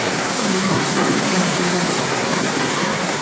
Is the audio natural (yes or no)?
no